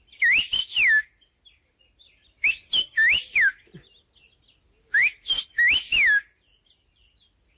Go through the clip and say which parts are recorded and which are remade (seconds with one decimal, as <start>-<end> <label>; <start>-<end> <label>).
0.0-7.6 recorded